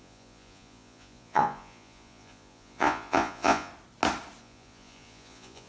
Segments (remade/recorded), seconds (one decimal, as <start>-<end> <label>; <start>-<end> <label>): 0.0-3.7 remade; 3.7-4.4 recorded; 4.4-5.7 remade

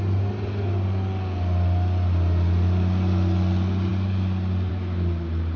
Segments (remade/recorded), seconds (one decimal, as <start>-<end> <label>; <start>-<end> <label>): 0.0-5.6 recorded